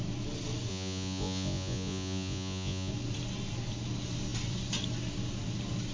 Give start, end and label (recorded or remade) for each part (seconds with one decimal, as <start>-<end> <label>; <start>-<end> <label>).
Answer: 0.0-0.7 recorded; 0.7-2.9 remade; 2.9-5.9 recorded